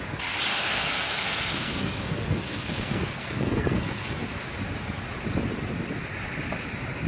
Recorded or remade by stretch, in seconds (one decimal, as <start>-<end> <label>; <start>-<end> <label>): 0.0-0.6 recorded; 0.6-4.3 remade; 4.3-7.1 recorded